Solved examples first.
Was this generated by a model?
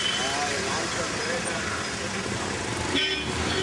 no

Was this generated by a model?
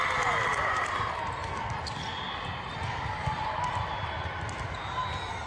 no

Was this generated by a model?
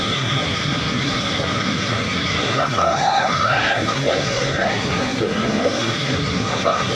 yes